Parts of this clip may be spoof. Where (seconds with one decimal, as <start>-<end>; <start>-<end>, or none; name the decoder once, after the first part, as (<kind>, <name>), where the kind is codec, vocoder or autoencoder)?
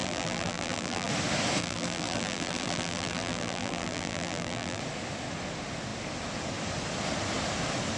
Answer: 0.0-1.1 (vocoder, BigVGAN v2); 1.6-4.8